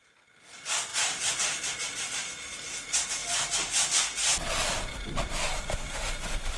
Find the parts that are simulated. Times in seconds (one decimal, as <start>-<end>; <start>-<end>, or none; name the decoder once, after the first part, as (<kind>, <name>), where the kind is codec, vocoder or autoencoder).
none